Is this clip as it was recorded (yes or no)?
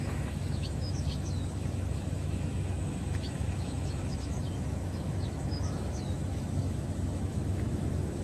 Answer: no